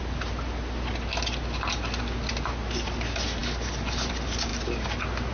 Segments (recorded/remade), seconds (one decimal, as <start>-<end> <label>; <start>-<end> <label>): 0.0-5.3 recorded

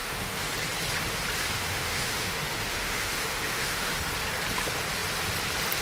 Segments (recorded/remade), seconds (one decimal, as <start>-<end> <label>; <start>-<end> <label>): 0.0-0.5 remade; 0.5-1.4 recorded; 1.4-3.9 remade; 3.9-5.8 recorded